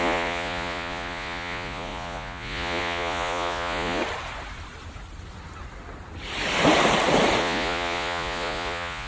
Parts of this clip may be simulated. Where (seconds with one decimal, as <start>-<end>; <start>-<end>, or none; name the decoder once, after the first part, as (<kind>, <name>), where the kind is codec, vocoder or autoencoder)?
0.0-4.0 (vocoder, Vocos); 7.4-9.1